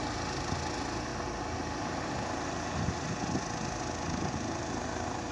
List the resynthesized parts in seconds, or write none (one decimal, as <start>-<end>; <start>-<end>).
none